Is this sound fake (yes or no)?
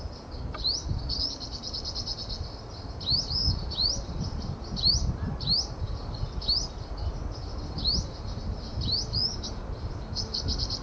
no